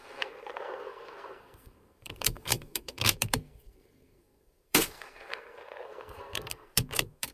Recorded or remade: remade